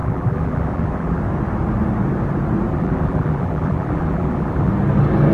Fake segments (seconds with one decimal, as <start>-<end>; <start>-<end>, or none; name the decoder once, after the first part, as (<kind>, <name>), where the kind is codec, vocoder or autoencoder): 0.0-1.2 (vocoder, BigVGAN v2); 2.7-4.7